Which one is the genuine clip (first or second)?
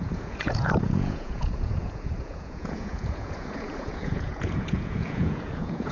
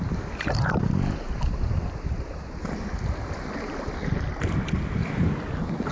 second